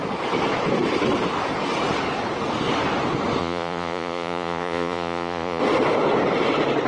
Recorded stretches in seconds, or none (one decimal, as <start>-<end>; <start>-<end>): 0.0-3.4; 5.6-6.9